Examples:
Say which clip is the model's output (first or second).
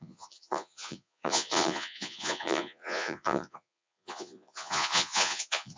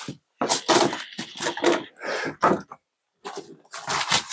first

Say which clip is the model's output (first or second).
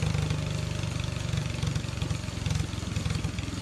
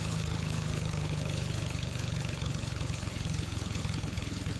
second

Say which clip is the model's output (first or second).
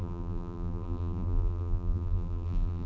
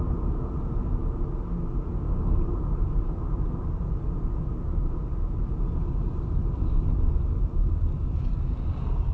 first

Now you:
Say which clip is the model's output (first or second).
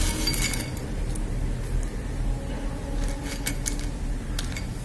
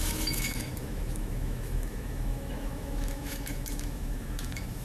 second